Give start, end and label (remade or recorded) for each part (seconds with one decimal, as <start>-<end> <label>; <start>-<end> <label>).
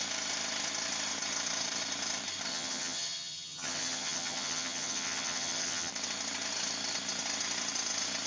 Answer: 0.0-2.5 recorded; 2.5-5.9 remade; 5.9-8.3 recorded